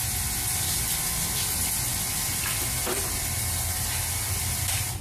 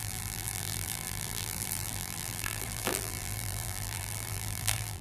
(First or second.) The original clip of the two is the first